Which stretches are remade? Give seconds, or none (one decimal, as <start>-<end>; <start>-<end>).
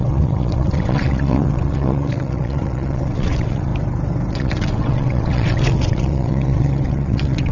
0.0-3.7; 4.3-7.5